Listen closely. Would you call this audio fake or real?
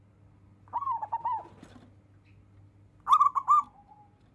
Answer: real